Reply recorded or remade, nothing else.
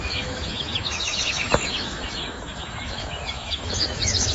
remade